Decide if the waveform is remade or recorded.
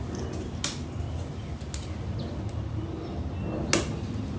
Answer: recorded